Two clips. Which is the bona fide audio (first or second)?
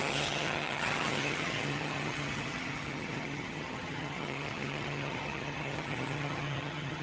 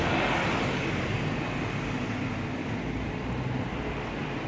second